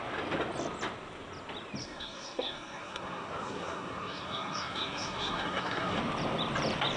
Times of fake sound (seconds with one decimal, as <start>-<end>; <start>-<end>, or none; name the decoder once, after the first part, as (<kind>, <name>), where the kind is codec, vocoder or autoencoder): 1.8-6.0 (codec, SNAC)